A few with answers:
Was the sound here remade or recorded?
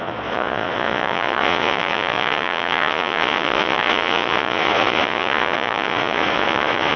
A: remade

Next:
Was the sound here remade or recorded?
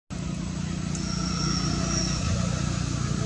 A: recorded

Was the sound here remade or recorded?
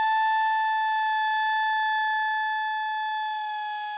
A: recorded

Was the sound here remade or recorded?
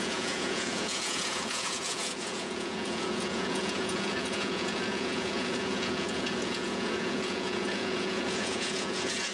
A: remade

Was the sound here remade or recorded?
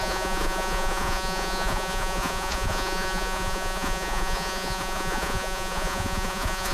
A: remade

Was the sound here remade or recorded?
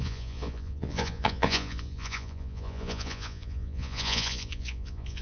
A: remade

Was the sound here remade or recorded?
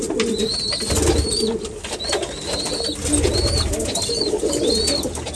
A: recorded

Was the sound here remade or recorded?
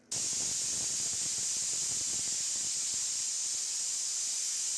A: recorded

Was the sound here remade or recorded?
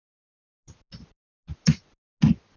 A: recorded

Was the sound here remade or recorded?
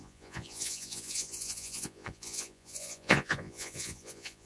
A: remade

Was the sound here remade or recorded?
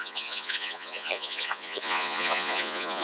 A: remade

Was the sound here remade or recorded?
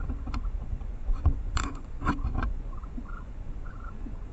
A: remade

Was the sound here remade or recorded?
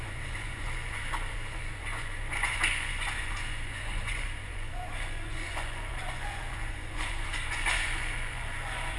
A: remade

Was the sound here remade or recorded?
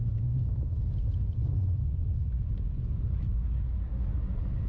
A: recorded